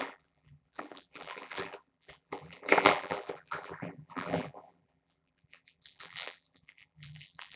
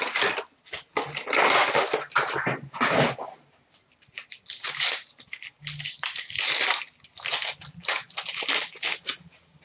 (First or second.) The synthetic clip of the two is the first